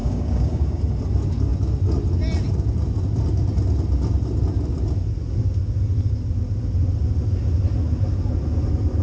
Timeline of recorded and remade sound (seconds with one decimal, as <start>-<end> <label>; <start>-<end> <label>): 0.0-0.8 remade; 0.8-9.0 recorded

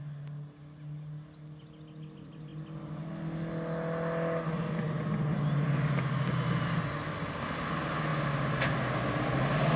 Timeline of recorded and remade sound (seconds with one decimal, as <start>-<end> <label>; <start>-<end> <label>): 0.0-9.8 recorded

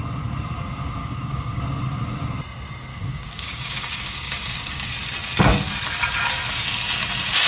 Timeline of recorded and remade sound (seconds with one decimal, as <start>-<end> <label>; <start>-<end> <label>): 0.0-1.0 recorded; 1.0-1.6 remade; 1.6-2.9 recorded; 2.9-4.9 remade; 4.9-7.5 recorded

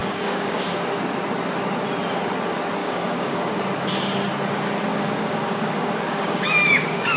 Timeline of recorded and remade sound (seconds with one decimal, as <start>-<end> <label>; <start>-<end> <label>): 0.0-0.7 remade; 0.7-2.8 recorded; 2.8-3.6 remade; 3.6-4.9 recorded; 4.9-7.2 remade

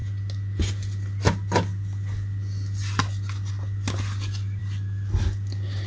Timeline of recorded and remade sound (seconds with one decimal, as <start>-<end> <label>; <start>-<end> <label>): 0.0-5.9 recorded

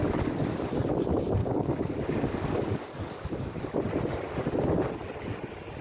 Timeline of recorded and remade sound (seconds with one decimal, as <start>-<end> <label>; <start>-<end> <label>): 0.0-1.4 recorded; 1.4-3.8 remade; 3.8-5.8 recorded

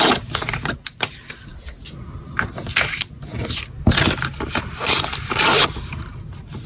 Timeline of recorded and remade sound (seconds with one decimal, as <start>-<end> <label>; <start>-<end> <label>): 0.0-6.7 recorded

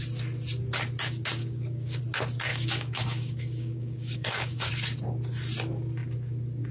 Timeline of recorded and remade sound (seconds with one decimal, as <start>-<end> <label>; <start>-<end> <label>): 0.0-1.4 recorded; 1.4-2.0 remade; 2.0-2.5 recorded; 2.5-4.7 remade; 4.7-6.7 recorded